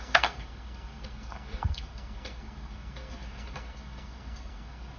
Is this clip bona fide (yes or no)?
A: no